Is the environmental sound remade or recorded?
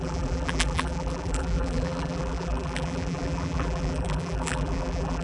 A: remade